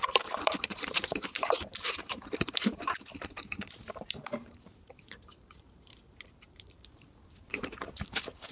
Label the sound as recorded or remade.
remade